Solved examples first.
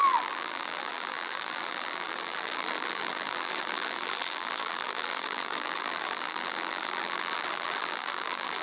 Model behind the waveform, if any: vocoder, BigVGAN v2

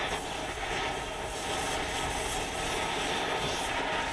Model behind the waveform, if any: none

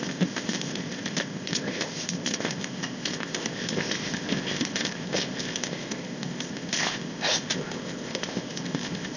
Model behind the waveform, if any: codec, ZipCodec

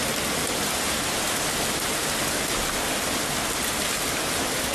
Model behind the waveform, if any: none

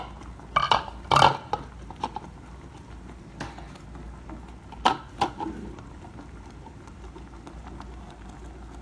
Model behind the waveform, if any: none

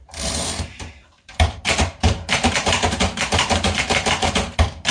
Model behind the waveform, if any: vocoder, BigVGAN v2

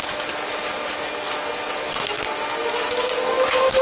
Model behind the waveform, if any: none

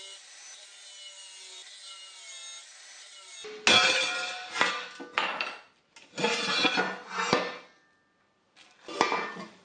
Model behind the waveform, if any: none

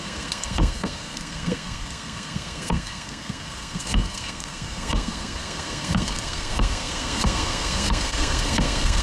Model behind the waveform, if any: codec, SNAC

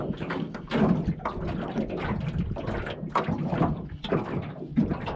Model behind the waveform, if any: none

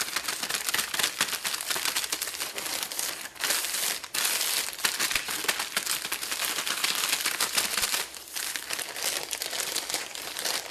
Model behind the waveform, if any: none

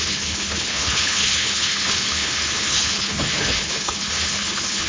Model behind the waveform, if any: codec, HILCodec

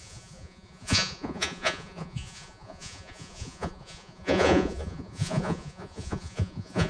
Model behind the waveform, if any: vocoder, Vocos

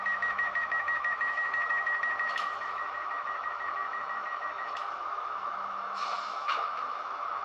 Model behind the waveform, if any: autoencoder, DAC-VAE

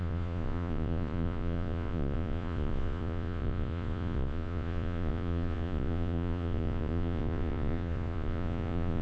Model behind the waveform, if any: vocoder, Vocos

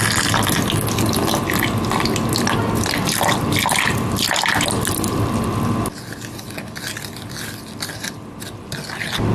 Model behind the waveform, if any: none